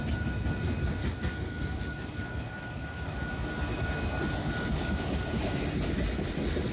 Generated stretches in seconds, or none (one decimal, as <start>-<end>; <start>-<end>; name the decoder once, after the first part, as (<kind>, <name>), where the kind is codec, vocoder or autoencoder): 1.0-3.3 (codec, DAC); 4.4-5.4